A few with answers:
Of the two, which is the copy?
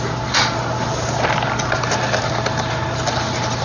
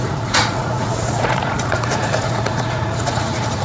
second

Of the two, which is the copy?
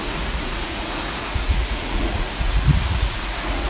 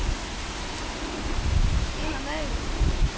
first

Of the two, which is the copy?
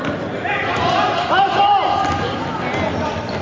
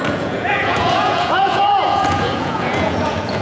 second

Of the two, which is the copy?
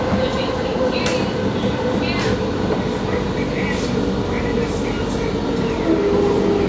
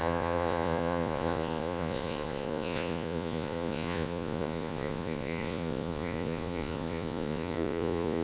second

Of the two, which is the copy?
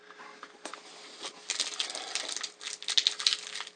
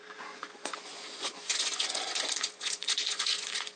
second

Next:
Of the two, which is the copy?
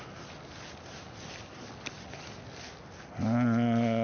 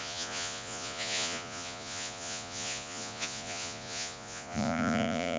second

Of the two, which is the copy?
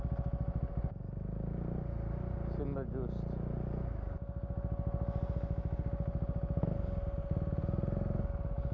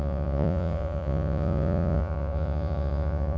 second